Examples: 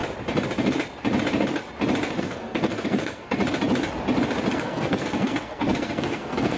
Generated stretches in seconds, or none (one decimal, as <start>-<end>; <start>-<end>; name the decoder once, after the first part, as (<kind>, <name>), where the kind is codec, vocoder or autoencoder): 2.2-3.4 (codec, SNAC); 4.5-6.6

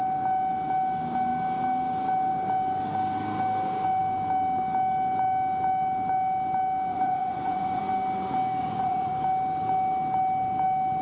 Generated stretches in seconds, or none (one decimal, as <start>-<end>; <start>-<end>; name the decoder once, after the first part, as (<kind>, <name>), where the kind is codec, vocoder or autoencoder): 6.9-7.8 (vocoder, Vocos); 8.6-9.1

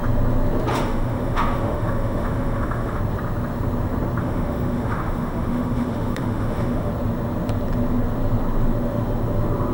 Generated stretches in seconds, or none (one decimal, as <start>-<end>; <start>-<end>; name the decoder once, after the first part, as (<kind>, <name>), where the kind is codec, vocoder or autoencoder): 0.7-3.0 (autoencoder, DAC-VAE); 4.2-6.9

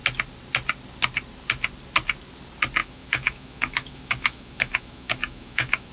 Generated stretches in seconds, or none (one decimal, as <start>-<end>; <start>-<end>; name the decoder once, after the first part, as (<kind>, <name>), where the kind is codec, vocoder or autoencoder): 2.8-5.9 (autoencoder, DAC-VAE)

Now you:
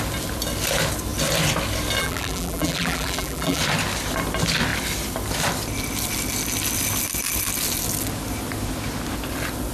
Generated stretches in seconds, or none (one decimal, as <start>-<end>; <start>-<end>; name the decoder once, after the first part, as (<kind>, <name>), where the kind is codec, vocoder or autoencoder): 2.0-3.6 (vocoder, BigVGAN v2)